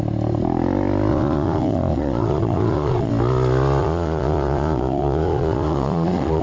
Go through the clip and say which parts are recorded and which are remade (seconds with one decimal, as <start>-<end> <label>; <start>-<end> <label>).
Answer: 0.0-1.1 recorded; 1.1-3.1 remade; 3.1-3.8 recorded; 3.8-6.4 remade